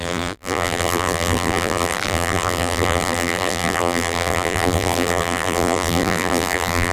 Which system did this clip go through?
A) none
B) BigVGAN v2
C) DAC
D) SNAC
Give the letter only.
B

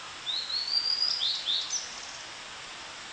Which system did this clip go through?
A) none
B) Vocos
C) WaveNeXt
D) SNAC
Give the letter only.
A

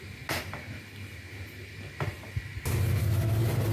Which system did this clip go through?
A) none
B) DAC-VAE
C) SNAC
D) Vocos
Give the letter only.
A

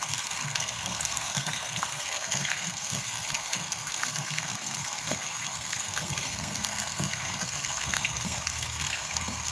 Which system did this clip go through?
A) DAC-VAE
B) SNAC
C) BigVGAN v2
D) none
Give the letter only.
B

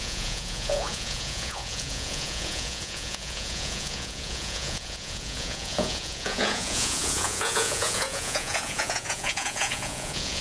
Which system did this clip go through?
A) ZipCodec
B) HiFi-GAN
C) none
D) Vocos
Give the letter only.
D